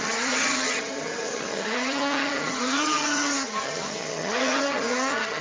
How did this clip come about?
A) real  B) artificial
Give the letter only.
B